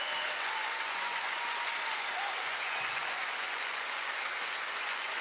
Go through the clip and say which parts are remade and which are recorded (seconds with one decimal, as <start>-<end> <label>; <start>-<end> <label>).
0.0-5.2 remade